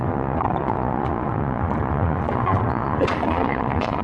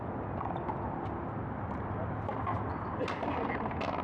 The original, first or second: second